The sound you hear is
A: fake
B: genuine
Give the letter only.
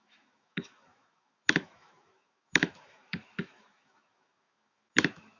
A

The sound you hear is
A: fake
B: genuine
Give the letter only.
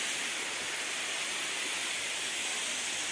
A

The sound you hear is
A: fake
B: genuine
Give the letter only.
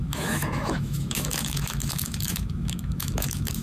A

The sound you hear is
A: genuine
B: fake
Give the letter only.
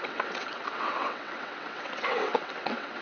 B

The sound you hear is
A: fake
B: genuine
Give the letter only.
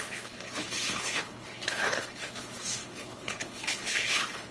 A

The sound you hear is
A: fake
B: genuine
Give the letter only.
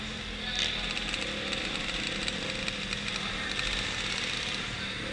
B